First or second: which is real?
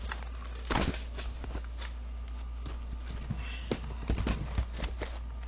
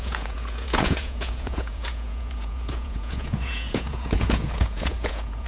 first